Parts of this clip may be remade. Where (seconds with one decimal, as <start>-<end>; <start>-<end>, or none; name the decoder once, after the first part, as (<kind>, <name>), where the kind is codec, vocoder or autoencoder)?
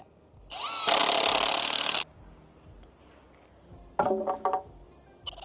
none